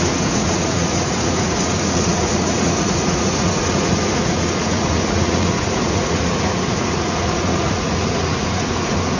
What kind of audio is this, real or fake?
fake